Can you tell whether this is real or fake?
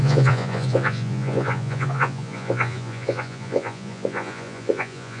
fake